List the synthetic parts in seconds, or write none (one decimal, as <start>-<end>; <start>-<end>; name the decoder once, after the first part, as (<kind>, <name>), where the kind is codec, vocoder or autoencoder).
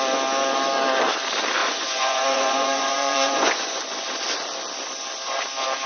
1.6-3.8 (vocoder, Vocos)